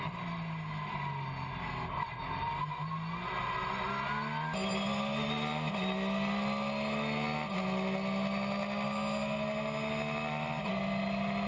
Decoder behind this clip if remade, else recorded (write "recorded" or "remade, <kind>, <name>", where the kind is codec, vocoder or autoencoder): recorded